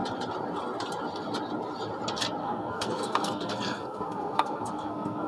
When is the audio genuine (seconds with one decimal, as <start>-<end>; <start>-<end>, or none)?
0.0-2.4